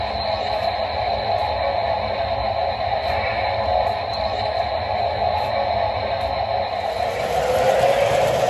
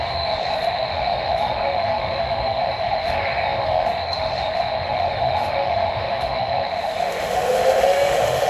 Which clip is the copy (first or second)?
second